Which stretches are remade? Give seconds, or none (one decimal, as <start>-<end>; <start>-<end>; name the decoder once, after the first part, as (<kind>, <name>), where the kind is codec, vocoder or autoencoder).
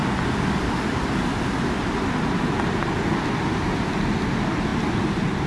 none